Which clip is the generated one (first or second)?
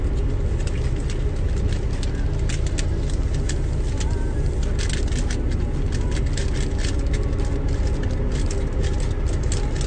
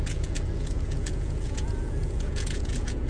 second